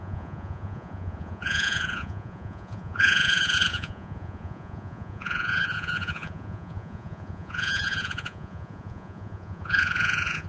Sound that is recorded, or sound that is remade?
remade